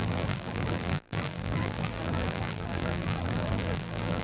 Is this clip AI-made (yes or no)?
yes